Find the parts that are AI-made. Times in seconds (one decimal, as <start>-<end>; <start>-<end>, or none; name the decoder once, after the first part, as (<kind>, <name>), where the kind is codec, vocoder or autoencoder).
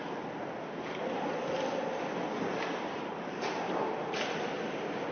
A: 3.1-5.1 (vocoder, BigVGAN v2)